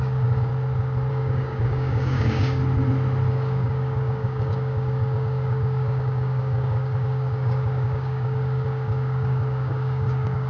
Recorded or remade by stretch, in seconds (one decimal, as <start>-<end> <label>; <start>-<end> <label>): 0.0-0.5 remade; 0.5-1.1 recorded; 1.1-2.6 remade; 2.6-3.3 recorded; 3.3-10.5 remade